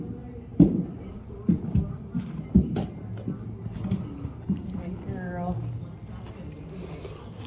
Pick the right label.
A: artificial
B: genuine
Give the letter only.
B